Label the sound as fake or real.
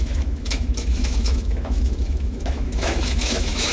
fake